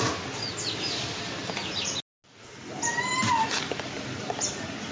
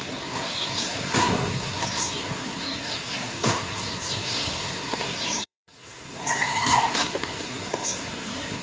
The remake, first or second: second